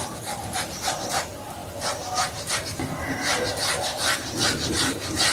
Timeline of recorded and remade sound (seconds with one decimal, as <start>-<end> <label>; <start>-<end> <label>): 0.0-5.3 recorded